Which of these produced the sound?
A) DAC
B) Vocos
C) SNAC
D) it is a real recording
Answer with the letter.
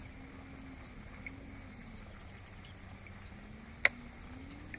D